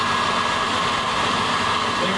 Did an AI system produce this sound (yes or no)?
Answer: no